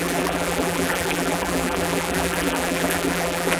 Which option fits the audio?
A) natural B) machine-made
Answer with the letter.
B